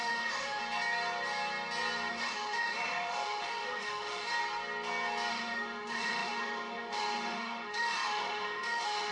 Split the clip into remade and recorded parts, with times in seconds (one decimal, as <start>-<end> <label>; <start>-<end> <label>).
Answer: 0.0-0.6 remade; 0.6-2.1 recorded; 2.1-4.3 remade; 4.3-5.3 recorded; 5.3-9.1 remade